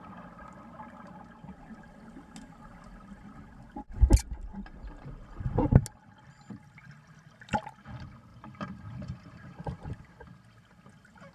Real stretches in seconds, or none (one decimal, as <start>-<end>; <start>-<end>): 0.0-8.3; 10.2-11.3